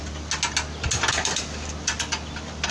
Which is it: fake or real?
real